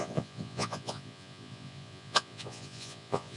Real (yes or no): no